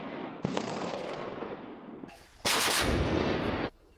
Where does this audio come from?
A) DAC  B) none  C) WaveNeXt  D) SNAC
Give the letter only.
D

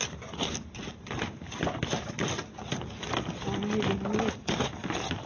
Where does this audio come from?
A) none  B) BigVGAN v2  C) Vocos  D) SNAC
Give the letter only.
A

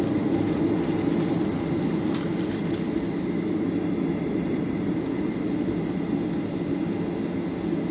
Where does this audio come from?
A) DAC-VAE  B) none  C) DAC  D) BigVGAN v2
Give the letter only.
B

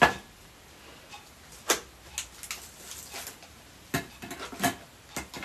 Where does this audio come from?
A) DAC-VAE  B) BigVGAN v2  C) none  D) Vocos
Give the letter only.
C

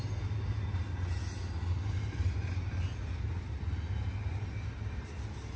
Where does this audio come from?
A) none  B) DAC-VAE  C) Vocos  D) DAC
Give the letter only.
A